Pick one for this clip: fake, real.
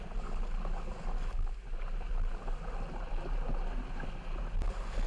real